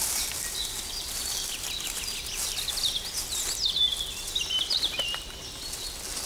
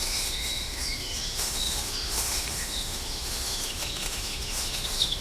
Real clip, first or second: first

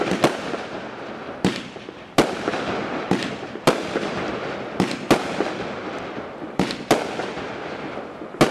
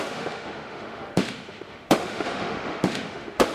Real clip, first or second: first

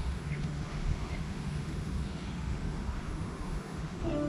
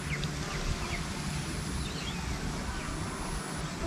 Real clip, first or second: second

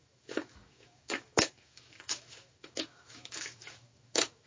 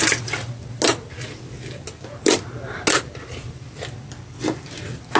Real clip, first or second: second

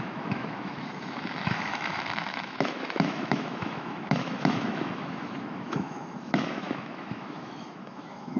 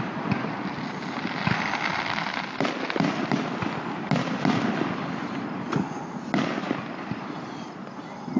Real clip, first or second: second